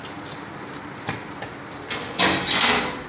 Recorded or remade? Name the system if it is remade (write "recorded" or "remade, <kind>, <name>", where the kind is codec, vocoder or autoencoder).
recorded